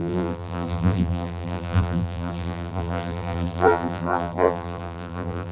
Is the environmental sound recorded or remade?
remade